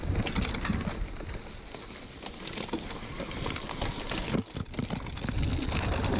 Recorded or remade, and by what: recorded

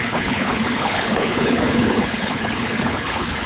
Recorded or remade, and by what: remade, codec, HILCodec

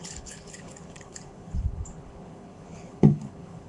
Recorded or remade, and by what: remade, codec, HILCodec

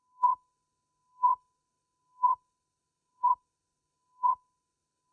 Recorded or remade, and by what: remade, codec, HILCodec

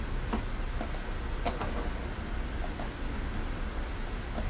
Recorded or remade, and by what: recorded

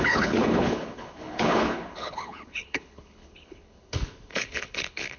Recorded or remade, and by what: remade, codec, HILCodec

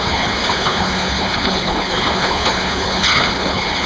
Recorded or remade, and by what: remade, codec, HILCodec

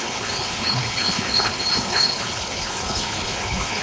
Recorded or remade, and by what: remade, codec, HILCodec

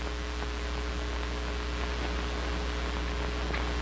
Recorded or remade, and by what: recorded